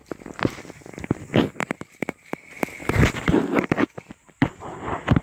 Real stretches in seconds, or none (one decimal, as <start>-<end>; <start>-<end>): 0.0-2.8; 4.7-5.2

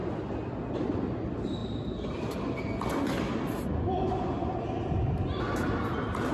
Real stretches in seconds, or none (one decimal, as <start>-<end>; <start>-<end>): 0.0-6.3

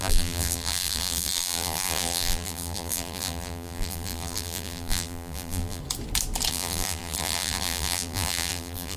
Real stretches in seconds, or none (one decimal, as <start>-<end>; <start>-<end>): 5.8-6.5

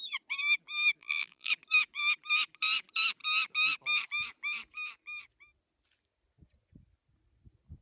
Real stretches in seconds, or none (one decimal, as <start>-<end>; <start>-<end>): 0.0-1.0; 1.5-7.8

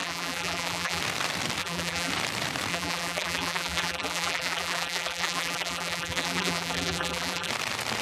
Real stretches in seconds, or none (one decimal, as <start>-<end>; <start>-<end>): 1.0-1.6; 2.1-2.7; 7.5-8.0

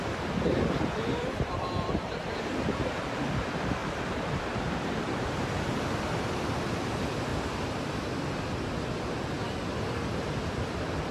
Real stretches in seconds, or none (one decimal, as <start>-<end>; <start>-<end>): none

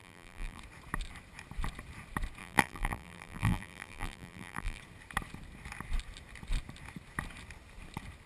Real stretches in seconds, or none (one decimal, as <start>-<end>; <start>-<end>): 0.6-2.4; 4.8-8.3

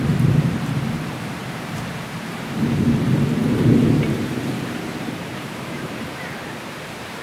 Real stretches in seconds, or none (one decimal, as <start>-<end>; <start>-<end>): none